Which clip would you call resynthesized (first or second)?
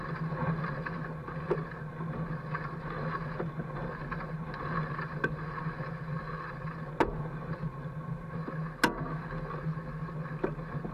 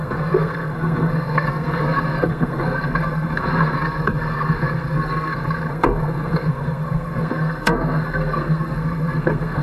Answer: second